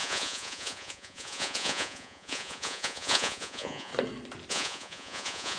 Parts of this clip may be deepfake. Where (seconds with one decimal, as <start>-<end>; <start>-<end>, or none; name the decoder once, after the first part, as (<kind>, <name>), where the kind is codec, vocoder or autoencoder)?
0.0-3.9 (vocoder, Vocos); 4.5-5.6